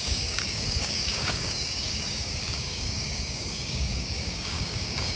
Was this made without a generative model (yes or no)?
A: no